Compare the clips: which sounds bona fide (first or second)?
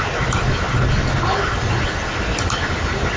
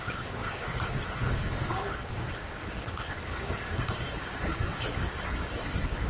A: first